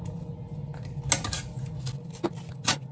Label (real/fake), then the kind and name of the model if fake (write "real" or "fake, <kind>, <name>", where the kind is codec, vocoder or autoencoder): real